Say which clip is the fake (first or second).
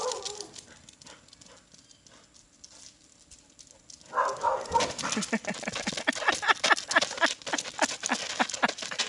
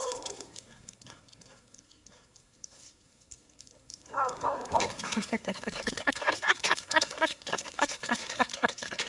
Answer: second